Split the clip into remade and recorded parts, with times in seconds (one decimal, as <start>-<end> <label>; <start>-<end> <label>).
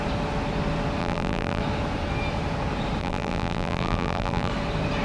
0.0-1.0 recorded; 1.0-1.6 remade; 1.6-3.0 recorded; 3.0-4.5 remade; 4.5-5.0 recorded